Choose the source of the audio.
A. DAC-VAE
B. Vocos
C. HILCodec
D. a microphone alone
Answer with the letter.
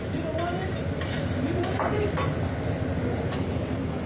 D